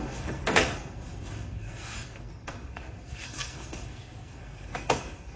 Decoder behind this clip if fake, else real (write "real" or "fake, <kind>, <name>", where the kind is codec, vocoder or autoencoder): fake, codec, SNAC